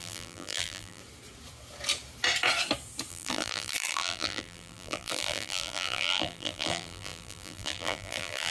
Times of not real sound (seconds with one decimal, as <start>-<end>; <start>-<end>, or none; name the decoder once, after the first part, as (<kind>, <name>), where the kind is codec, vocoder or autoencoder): 0.0-1.0 (vocoder, BigVGAN v2); 3.1-8.5